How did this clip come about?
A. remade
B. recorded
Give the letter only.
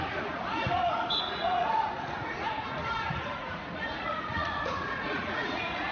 A